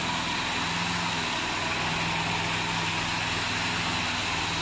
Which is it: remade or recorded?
recorded